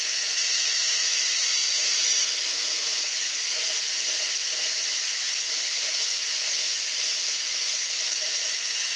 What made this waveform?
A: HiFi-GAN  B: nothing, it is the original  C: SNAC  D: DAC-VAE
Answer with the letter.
D